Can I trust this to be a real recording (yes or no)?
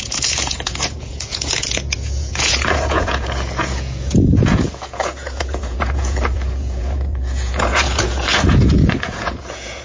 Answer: no